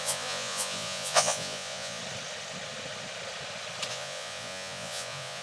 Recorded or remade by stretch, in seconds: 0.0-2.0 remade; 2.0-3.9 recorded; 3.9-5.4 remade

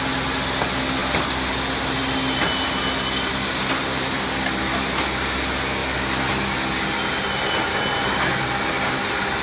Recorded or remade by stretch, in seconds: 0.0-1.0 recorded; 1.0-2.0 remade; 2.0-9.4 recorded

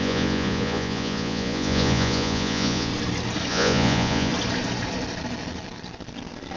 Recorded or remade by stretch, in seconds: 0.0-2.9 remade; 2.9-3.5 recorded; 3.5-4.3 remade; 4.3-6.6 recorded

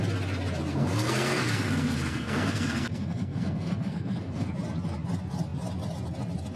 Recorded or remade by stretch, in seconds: 0.0-0.7 recorded; 0.7-4.5 remade; 4.5-6.6 recorded

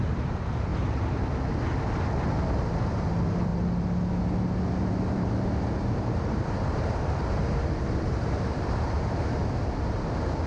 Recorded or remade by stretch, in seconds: 0.0-0.7 remade; 0.7-2.6 recorded; 2.6-3.5 remade; 3.5-4.7 recorded; 4.7-9.4 remade; 9.4-10.5 recorded

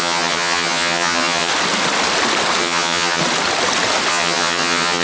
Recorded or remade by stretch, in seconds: 0.0-1.5 remade; 1.5-2.6 recorded; 2.6-3.2 remade; 3.2-4.1 recorded; 4.1-5.0 remade